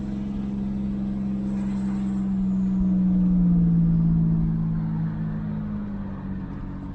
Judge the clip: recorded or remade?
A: recorded